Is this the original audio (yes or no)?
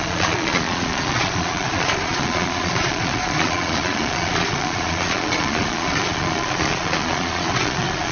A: no